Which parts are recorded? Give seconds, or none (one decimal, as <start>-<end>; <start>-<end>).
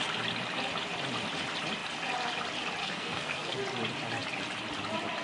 0.0-2.8; 3.6-5.2